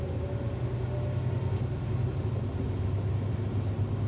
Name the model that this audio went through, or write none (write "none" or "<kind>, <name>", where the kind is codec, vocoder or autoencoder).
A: none